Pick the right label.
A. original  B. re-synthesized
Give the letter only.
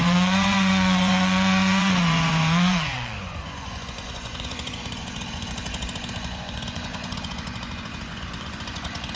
B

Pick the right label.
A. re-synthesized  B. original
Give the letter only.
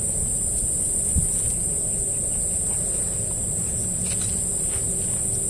B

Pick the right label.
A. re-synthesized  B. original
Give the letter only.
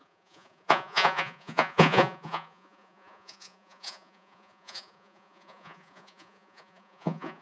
A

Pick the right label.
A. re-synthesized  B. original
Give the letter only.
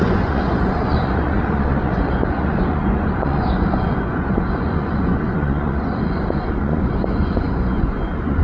A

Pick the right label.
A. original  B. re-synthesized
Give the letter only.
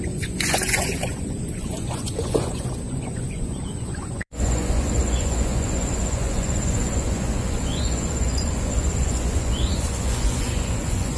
B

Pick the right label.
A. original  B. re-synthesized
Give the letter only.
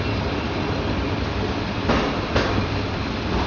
A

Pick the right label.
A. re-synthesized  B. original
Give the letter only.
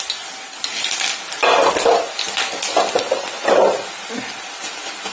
B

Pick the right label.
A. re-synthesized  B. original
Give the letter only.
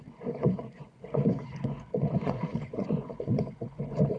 A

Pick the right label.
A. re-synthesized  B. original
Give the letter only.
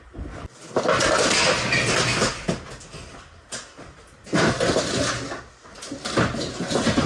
B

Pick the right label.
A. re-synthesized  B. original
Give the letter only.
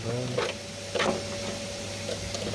B